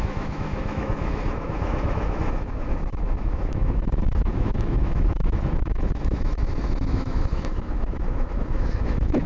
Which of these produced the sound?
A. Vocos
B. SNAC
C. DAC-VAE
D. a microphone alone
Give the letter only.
C